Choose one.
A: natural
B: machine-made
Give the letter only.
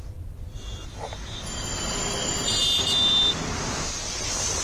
A